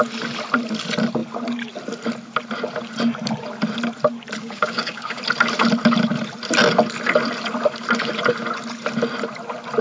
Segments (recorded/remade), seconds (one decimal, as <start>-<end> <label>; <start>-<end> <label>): 0.0-4.4 recorded; 4.4-5.2 remade; 5.2-9.8 recorded